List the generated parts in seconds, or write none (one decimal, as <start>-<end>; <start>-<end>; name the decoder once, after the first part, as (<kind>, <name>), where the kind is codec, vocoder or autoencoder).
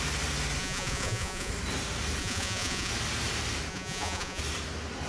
0.6-1.5 (vocoder, Vocos); 2.2-2.9; 3.7-4.4